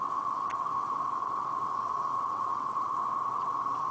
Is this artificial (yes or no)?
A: yes